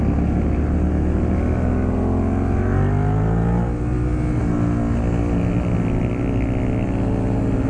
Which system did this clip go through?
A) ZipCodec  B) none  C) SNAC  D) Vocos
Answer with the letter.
B